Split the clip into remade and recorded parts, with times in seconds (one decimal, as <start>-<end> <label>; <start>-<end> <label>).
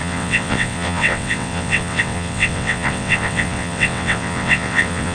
0.0-5.1 remade